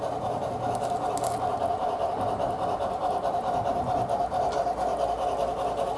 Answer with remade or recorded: recorded